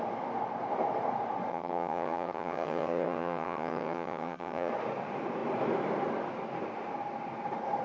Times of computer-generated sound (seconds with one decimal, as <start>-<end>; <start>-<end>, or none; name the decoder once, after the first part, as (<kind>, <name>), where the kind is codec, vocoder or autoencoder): 1.5-4.7 (vocoder, HiFi-GAN)